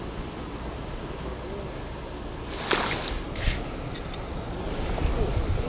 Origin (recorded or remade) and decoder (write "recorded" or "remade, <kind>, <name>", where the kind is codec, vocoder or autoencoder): recorded